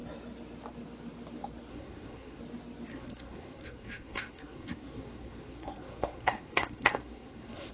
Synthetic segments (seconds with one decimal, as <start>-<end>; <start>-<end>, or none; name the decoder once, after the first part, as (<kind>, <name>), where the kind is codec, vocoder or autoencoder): 1.7-2.4 (codec, SNAC); 2.9-7.7